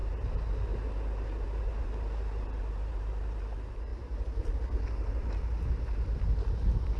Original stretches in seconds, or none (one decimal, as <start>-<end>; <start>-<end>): 0.0-7.0